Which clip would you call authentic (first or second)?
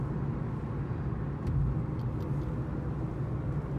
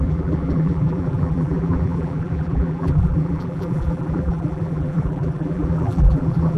first